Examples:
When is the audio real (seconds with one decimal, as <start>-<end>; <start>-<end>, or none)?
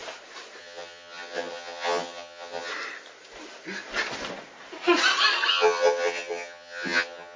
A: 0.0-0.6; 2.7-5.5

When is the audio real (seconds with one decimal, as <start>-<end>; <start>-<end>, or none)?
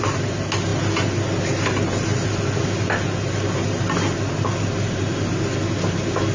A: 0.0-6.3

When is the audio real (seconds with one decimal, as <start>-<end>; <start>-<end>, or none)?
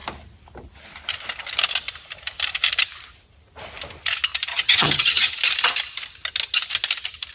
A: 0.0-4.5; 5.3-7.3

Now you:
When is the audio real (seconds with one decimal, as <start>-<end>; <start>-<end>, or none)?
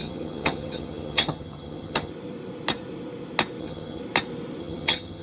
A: 2.1-3.6; 4.0-4.6